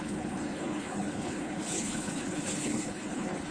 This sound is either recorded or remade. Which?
remade